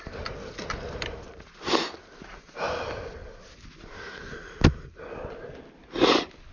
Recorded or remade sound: recorded